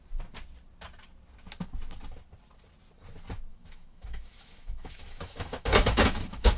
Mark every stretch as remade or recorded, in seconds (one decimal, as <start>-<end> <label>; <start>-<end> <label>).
0.0-3.5 recorded; 3.5-6.6 remade